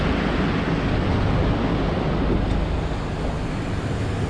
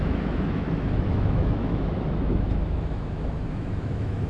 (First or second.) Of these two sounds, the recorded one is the first